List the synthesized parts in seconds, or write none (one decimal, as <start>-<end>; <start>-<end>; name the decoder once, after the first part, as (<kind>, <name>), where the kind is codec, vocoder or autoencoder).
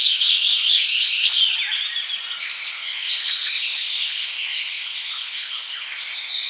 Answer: 0.0-1.4 (codec, ZipCodec); 2.4-6.5